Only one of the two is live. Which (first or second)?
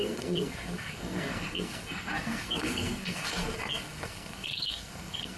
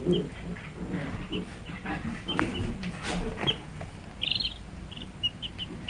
second